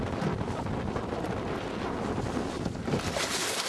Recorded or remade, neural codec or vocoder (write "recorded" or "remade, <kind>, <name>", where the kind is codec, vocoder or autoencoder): recorded